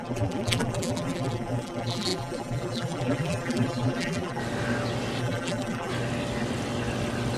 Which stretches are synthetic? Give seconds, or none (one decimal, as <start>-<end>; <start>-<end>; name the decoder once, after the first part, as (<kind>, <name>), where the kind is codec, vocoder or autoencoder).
0.0-4.4 (vocoder, BigVGAN v2); 5.2-5.9